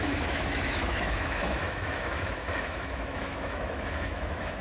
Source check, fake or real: fake